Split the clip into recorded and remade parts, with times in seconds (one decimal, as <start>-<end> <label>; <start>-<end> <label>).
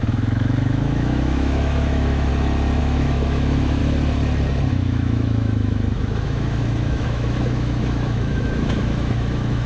0.0-2.3 remade; 2.3-2.8 recorded; 2.8-3.8 remade; 3.8-4.7 recorded; 4.7-9.7 remade